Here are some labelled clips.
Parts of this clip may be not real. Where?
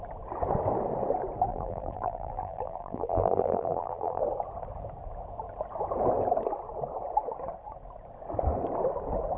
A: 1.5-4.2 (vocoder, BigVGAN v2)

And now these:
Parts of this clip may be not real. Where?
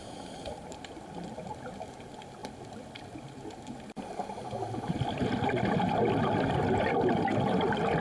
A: 0.0-2.0 (vocoder, BigVGAN v2); 2.4-5.1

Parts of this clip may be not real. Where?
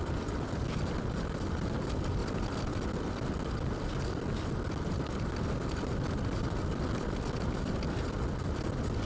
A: 0.0-2.2 (vocoder, BigVGAN v2); 5.2-9.0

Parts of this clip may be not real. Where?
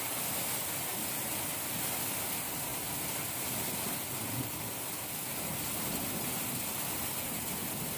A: none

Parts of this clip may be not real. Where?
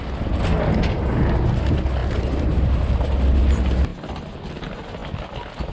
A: 2.0-3.2 (vocoder, BigVGAN v2)